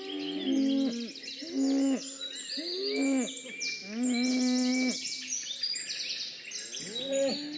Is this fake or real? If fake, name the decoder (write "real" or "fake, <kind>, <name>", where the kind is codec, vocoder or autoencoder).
real